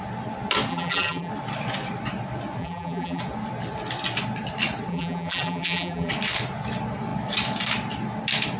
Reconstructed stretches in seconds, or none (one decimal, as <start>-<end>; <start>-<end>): 0.7-1.3; 2.6-3.2; 4.9-6.1